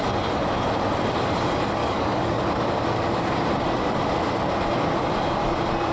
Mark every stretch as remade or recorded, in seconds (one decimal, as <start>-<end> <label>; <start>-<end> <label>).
0.0-1.8 recorded; 1.8-2.4 remade; 2.4-5.9 recorded